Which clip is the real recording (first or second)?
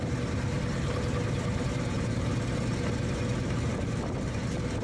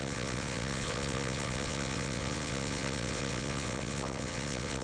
first